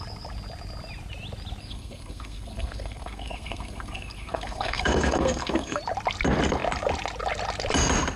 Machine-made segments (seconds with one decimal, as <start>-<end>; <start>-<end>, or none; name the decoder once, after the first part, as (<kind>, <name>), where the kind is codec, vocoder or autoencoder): 1.6-5.8 (codec, SNAC)